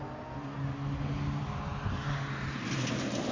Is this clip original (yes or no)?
yes